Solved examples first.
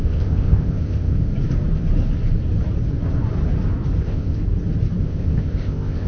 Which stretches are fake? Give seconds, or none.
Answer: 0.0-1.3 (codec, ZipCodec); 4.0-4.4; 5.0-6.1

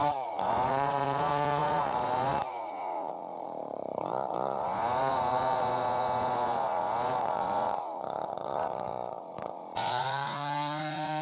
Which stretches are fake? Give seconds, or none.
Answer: 0.0-11.2 (vocoder, Vocos)

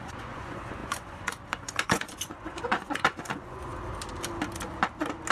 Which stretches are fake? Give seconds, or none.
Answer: 0.0-3.7 (vocoder, Vocos)